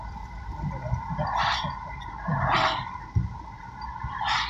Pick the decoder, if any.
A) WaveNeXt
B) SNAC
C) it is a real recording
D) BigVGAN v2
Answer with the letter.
C